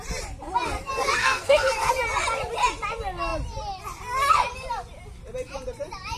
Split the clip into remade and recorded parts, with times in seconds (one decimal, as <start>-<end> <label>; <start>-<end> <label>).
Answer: 0.0-1.2 recorded; 1.2-1.9 remade; 1.9-6.2 recorded